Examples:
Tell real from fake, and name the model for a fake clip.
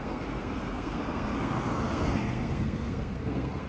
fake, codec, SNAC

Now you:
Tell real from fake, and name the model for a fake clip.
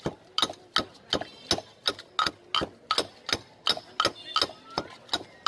real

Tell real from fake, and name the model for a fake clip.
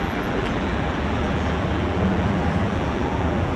fake, vocoder, BigVGAN v2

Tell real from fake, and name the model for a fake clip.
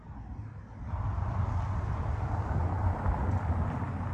real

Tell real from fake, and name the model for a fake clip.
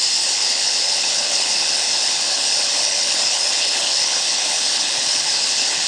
fake, codec, HILCodec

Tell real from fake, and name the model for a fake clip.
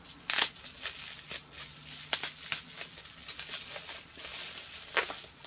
real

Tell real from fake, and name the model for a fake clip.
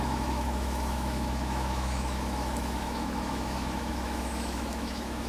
fake, autoencoder, DAC-VAE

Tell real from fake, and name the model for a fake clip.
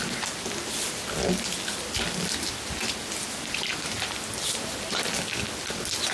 real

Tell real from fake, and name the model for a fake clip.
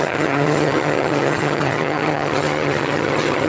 fake, vocoder, HiFi-GAN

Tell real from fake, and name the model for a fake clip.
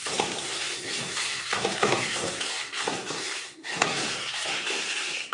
fake, codec, SNAC